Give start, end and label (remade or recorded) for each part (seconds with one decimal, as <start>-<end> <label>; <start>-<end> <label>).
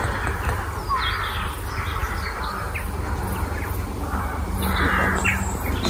0.0-5.9 recorded